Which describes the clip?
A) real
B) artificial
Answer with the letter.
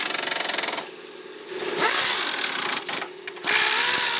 A